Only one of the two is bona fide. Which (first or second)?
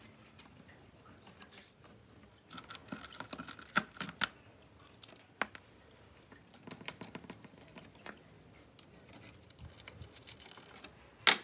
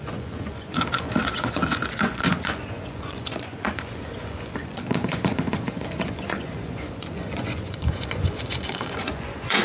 first